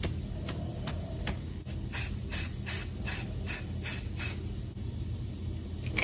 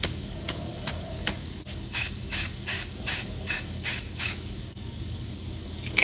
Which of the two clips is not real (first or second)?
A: second